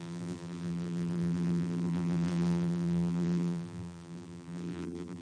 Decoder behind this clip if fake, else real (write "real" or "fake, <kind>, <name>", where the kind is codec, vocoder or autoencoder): fake, vocoder, BigVGAN v2